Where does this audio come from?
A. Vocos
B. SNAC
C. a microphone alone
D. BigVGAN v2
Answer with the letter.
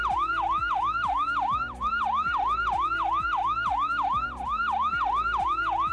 C